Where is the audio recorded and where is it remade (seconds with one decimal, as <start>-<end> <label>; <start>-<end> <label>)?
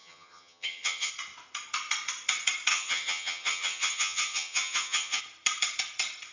0.0-1.1 remade; 1.1-2.7 recorded; 2.7-5.2 remade; 5.2-6.3 recorded